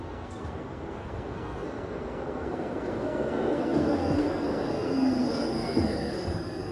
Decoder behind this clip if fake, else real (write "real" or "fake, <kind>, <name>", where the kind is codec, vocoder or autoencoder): fake, codec, SNAC